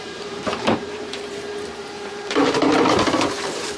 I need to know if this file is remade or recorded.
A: remade